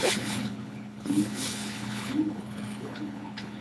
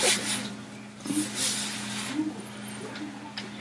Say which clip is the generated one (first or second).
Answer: first